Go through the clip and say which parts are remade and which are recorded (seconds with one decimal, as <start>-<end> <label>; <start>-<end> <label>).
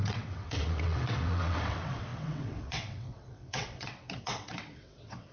0.0-5.3 remade